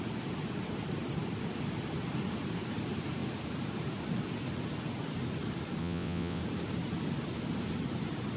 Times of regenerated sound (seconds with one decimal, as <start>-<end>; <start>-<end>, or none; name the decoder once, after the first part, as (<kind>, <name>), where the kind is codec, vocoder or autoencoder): 5.8-6.4 (vocoder, WaveNeXt)